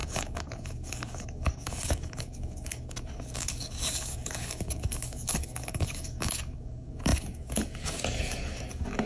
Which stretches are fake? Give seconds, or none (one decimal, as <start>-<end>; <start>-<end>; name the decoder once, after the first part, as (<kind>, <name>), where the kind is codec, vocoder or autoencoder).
0.0-9.1 (codec, DAC)